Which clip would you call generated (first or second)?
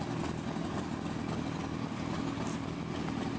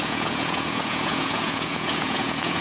second